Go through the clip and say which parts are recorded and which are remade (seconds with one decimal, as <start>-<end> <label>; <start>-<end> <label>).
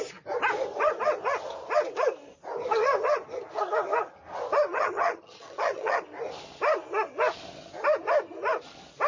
0.0-4.7 recorded; 4.7-6.0 remade; 6.0-9.1 recorded